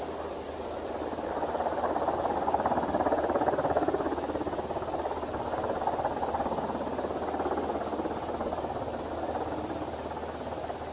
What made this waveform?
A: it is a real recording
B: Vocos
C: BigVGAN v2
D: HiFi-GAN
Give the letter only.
C